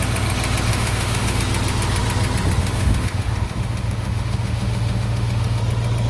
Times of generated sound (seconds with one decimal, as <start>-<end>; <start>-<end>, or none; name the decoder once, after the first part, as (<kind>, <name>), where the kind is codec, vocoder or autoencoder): 0.7-1.4 (autoencoder, DAC-VAE); 2.6-5.6